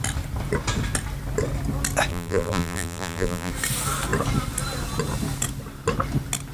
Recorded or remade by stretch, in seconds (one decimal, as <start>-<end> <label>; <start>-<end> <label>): 0.0-2.1 recorded; 2.1-3.5 remade; 3.5-6.5 recorded